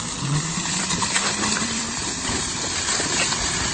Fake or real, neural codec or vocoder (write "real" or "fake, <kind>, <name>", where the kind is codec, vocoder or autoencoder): fake, vocoder, BigVGAN v2